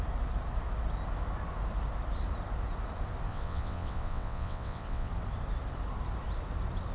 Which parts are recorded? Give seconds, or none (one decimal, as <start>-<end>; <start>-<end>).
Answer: 0.0-3.3; 5.1-6.9